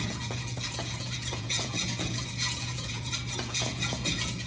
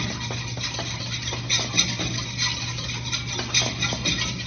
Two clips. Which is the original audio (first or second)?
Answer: second